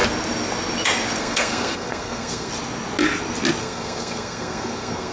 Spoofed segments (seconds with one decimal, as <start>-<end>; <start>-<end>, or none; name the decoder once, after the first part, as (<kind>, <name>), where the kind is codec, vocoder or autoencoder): 1.2-2.5 (codec, SNAC); 3.6-5.1